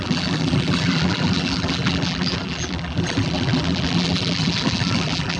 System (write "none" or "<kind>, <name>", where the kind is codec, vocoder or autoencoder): vocoder, BigVGAN v2